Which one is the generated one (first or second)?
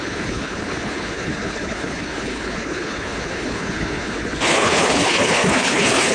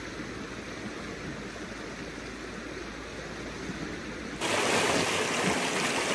first